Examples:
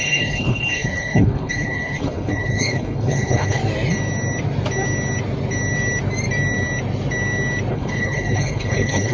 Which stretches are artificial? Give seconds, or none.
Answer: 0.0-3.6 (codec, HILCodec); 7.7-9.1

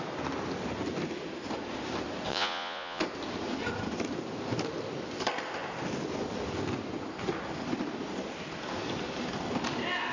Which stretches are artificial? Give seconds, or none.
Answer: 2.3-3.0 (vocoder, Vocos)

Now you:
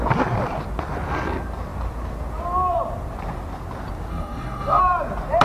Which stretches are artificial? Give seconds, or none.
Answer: 4.1-4.8 (codec, DAC)

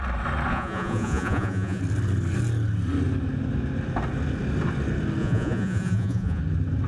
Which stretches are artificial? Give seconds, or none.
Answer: 0.5-1.8 (vocoder, Vocos); 5.2-6.4

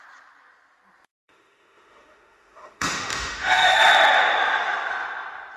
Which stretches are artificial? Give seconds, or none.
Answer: 1.1-3.8 (autoencoder, DAC-VAE)

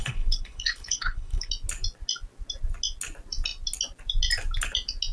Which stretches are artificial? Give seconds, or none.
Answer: 0.0-1.5 (codec, HILCodec)

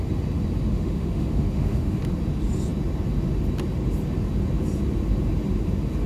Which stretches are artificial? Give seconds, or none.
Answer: 0.7-2.0 (autoencoder, DAC-VAE)